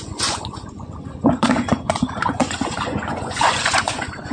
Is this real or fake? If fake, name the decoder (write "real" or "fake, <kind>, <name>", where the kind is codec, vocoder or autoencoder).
fake, vocoder, Vocos